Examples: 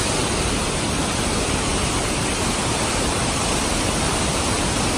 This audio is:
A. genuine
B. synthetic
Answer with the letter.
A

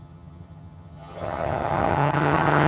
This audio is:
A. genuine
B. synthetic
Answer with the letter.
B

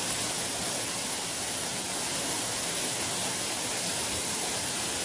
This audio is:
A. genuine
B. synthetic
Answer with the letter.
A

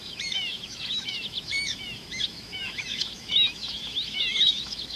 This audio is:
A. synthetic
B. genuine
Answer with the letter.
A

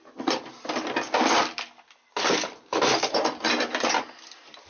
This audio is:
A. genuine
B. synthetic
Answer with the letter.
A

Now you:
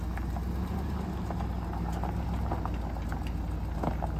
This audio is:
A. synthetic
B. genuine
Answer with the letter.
B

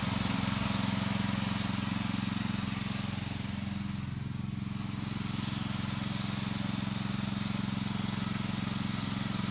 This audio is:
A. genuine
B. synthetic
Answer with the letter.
A